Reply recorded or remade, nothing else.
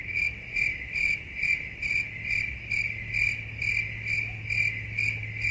recorded